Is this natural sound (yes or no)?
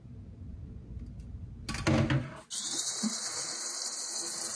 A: yes